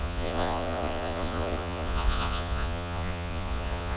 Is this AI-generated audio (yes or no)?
yes